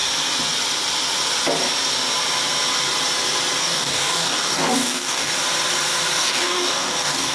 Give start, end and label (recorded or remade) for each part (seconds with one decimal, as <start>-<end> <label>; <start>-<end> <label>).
0.0-3.6 recorded; 3.6-5.3 remade; 5.3-6.2 recorded; 6.2-7.3 remade